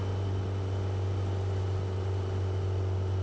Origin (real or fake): real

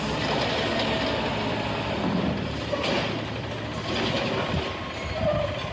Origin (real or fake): real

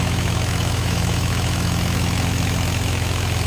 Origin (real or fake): fake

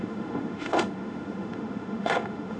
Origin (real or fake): fake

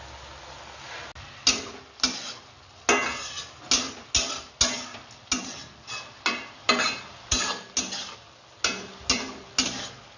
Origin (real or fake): real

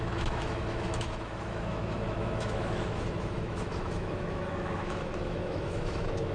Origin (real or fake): fake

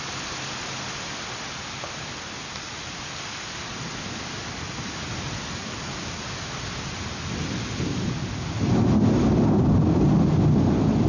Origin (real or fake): real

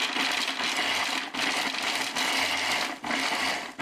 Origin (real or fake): real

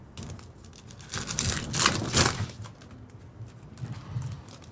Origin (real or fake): real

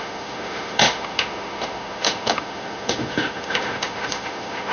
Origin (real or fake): fake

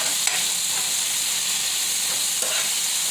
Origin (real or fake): real